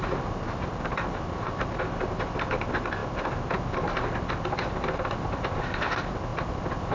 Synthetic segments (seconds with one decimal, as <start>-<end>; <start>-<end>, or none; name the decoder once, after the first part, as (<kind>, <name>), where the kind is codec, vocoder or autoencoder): 0.0-3.0 (vocoder, BigVGAN v2); 5.1-6.9